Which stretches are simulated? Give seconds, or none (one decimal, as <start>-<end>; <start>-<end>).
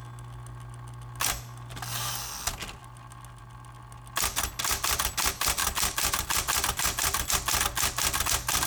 5.6-7.3